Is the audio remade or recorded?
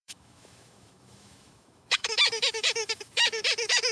remade